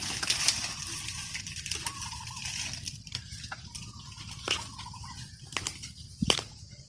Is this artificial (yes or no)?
no